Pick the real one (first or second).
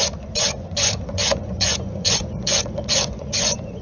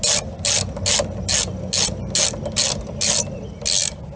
second